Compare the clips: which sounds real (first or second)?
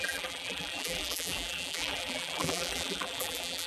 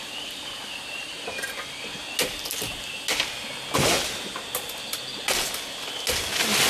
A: second